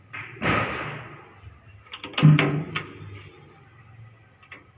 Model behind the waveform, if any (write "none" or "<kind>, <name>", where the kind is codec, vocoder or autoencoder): none